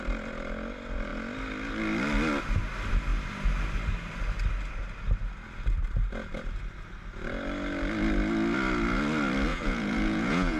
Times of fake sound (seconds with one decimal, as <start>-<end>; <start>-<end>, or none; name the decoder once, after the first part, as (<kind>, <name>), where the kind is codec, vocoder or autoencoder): 9.5-10.6 (vocoder, Vocos)